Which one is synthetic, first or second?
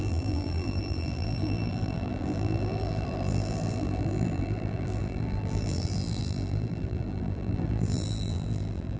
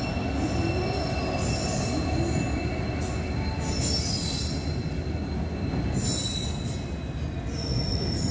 first